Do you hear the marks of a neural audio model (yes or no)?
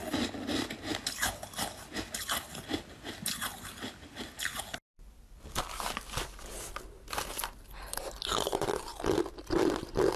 no